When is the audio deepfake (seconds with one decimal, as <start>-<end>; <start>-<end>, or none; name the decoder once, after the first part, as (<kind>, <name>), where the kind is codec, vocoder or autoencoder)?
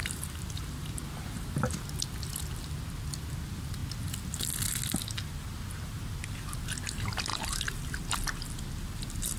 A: 0.0-1.6 (vocoder, BigVGAN v2); 7.3-7.9